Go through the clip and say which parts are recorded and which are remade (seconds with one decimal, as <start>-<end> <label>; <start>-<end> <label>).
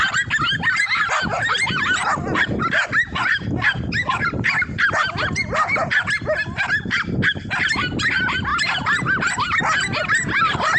0.0-8.5 recorded; 8.5-9.6 remade; 9.6-10.8 recorded